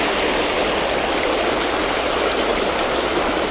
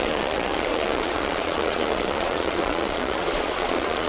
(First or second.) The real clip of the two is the first